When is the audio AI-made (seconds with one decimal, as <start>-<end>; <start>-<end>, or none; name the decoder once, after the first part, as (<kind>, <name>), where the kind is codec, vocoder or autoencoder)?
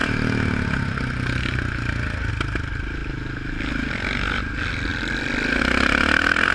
none